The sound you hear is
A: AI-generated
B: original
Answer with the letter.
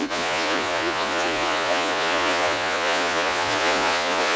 A